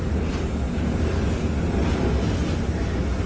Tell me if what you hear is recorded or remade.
recorded